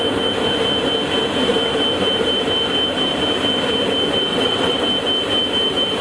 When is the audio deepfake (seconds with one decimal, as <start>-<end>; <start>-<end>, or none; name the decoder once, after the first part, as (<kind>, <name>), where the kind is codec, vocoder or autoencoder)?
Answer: 4.3-4.8 (vocoder, WaveNeXt)